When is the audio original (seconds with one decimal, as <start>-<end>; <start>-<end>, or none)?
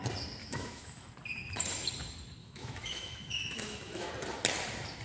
0.0-0.4; 1.1-2.4; 4.1-5.0